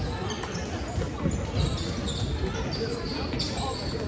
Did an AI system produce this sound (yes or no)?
no